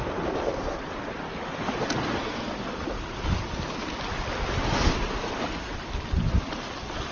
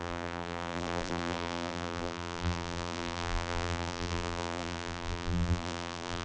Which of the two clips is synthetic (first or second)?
second